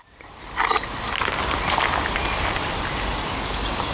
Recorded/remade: recorded